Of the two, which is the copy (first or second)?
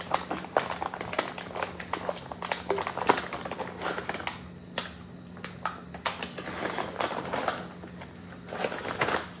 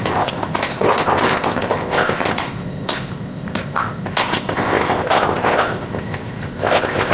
second